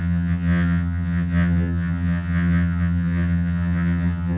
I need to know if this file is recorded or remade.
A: remade